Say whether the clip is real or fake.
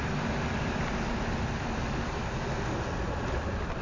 fake